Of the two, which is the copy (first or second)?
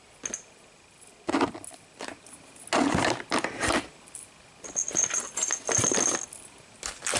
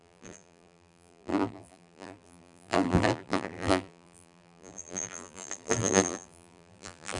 second